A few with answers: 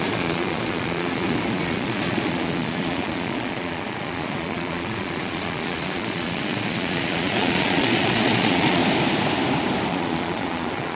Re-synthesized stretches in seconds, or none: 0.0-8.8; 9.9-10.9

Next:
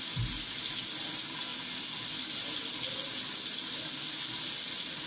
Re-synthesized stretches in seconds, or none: none

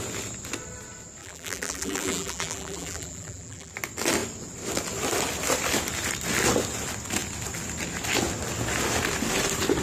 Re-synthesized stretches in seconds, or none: 1.2-3.7